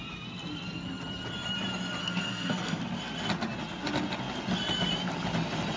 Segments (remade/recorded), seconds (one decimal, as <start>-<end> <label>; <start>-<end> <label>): 0.0-2.0 recorded; 2.0-2.8 remade; 2.8-5.8 recorded